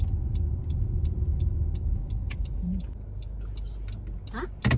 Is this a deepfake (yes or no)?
no